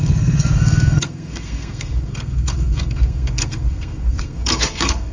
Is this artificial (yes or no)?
yes